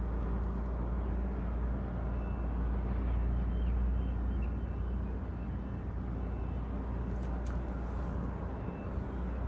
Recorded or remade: recorded